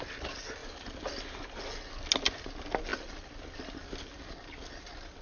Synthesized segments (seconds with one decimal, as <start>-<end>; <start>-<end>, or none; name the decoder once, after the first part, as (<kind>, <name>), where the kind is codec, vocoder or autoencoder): 0.6-1.6 (vocoder, BigVGAN v2)